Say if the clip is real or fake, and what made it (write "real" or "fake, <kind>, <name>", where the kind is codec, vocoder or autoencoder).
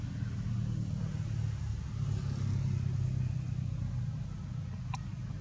real